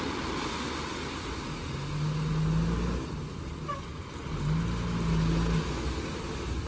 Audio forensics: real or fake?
real